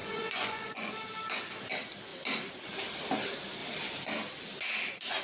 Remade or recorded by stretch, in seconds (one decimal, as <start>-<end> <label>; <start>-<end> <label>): 0.0-0.9 remade; 0.9-5.2 recorded